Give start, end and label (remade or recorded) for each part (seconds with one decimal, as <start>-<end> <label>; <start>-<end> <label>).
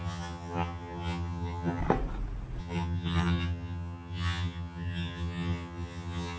0.0-1.8 remade; 1.8-2.6 recorded; 2.6-6.4 remade